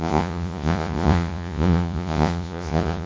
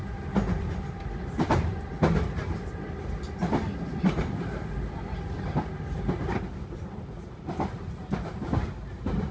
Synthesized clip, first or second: first